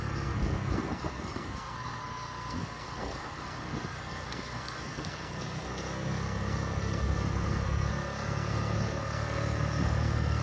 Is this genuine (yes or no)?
no